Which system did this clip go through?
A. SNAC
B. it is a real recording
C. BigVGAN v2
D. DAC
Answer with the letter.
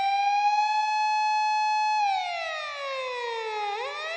B